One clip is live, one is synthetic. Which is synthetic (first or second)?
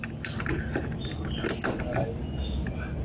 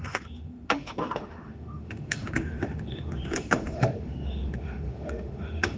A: second